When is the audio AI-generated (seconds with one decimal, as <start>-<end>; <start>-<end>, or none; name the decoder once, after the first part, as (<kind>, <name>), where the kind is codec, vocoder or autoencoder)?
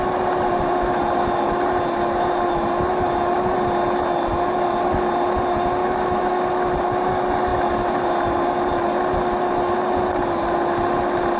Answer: 5.8-6.4 (autoencoder, DAC-VAE)